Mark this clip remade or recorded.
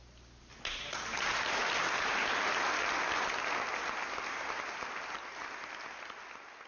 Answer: recorded